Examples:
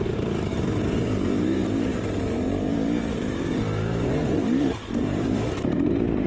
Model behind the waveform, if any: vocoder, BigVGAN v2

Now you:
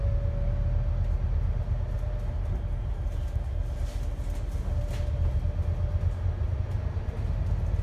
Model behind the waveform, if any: none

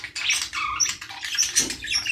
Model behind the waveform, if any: vocoder, BigVGAN v2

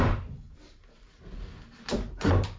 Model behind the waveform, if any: vocoder, BigVGAN v2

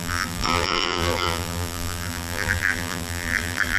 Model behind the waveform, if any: vocoder, BigVGAN v2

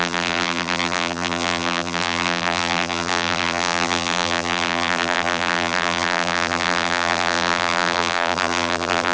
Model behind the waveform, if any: vocoder, BigVGAN v2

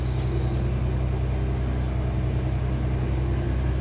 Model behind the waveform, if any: none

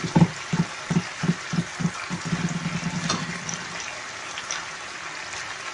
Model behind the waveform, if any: none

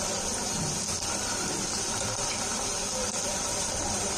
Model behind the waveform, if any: vocoder, BigVGAN v2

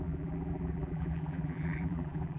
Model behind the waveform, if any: vocoder, BigVGAN v2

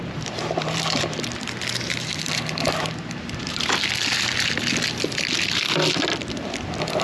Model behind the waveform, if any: vocoder, BigVGAN v2